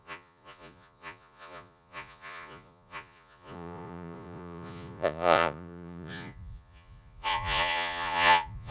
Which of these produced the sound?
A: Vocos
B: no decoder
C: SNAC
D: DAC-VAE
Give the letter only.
A